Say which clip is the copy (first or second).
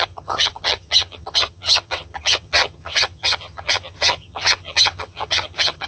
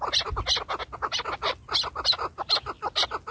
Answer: first